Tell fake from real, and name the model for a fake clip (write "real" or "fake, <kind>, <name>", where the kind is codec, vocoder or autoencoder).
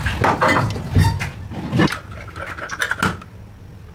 real